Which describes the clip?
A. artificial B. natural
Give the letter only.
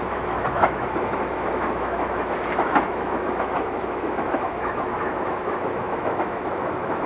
A